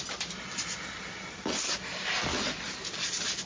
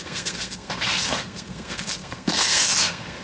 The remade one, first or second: second